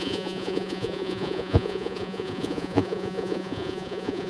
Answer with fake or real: fake